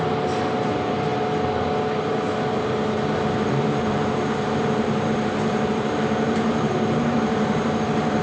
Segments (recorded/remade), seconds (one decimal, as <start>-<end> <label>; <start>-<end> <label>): 0.0-1.1 remade; 1.1-3.4 recorded; 3.4-8.2 remade